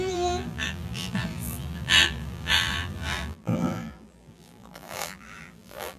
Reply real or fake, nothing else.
fake